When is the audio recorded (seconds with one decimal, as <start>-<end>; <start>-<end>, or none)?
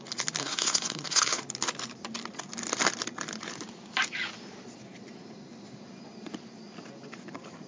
0.0-0.4; 1.4-7.7